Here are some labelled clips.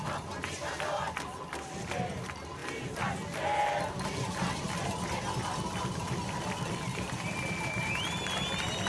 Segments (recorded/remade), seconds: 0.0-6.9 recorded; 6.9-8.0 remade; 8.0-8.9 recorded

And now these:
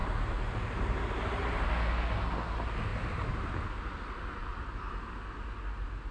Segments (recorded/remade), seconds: 0.0-1.7 remade; 1.7-2.9 recorded; 2.9-3.5 remade; 3.5-4.4 recorded; 4.4-5.1 remade; 5.1-6.1 recorded

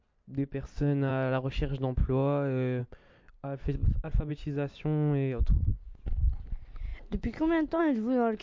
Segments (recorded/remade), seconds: 0.0-1.1 recorded; 1.1-2.8 remade; 2.8-3.8 recorded; 3.8-4.3 remade; 4.3-6.9 recorded; 6.9-7.8 remade; 7.8-8.4 recorded

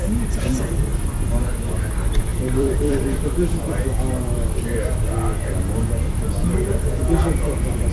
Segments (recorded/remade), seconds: 0.0-2.3 recorded; 2.3-4.6 remade; 4.6-7.9 recorded

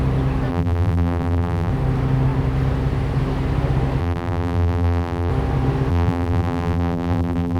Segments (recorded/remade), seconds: 0.0-0.5 recorded; 0.5-1.7 remade; 1.7-4.0 recorded; 4.0-5.3 remade; 5.3-5.9 recorded; 5.9-7.6 remade